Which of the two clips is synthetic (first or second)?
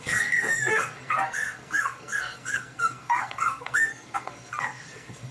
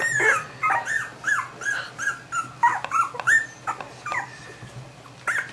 first